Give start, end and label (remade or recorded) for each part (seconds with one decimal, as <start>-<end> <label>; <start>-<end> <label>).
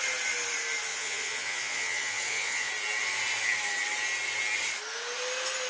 0.0-0.9 recorded; 0.9-2.7 remade; 2.7-5.7 recorded